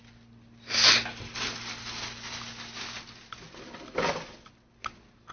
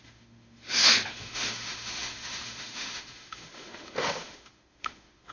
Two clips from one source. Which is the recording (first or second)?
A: first